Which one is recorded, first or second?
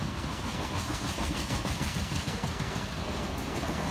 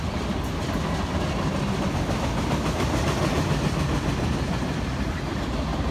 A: second